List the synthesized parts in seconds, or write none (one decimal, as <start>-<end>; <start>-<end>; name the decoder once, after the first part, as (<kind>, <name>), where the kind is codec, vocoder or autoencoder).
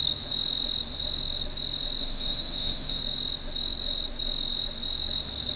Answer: 2.0-3.0 (autoencoder, DAC-VAE)